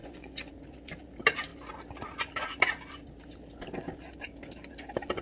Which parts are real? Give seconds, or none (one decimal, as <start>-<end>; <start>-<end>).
0.5-5.2